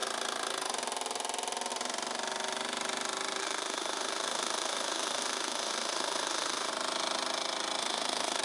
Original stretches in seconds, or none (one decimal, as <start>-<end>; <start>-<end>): 0.0-3.4; 6.7-7.8